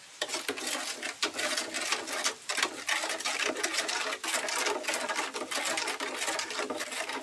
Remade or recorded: recorded